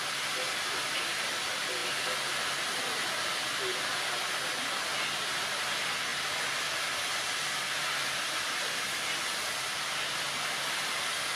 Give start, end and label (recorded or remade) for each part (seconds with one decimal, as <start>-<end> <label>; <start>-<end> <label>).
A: 0.0-11.4 recorded